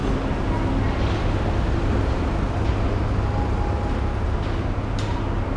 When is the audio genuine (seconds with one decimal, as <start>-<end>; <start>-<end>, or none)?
0.0-5.6